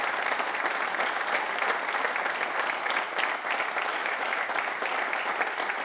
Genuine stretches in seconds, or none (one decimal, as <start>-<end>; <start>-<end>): 0.0-3.9; 4.4-5.8